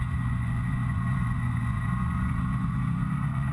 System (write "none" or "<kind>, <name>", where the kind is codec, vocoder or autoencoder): vocoder, Vocos